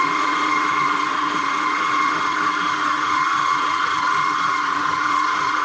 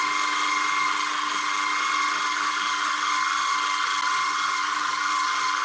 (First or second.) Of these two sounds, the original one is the second